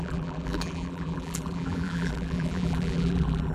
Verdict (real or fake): fake